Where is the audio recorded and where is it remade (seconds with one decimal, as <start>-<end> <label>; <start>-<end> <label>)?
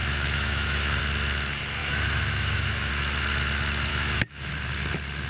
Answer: 0.0-1.0 remade; 1.0-1.8 recorded; 1.8-2.9 remade; 2.9-3.9 recorded; 3.9-4.5 remade; 4.5-5.3 recorded